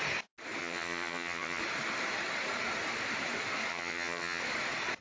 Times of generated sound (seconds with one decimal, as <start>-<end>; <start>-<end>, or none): 0.6-1.6; 3.7-4.4